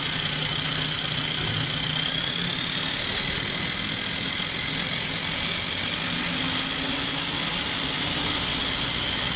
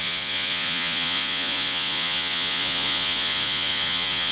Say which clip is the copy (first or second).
second